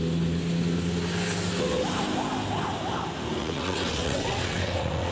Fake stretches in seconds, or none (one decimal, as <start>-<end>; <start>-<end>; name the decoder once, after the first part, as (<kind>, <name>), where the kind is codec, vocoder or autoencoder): 3.4-5.1 (vocoder, WaveNeXt)